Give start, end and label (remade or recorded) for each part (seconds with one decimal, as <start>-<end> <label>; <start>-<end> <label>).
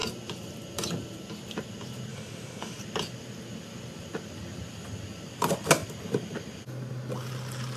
0.0-2.1 recorded; 2.1-2.8 remade; 2.8-7.8 recorded